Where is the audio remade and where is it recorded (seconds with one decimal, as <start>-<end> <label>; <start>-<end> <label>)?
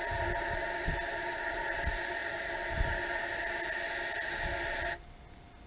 0.0-5.7 recorded